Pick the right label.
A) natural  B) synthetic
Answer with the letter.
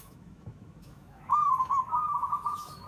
B